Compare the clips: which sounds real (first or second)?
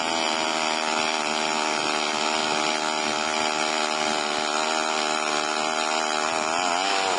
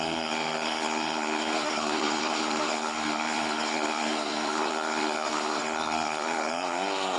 first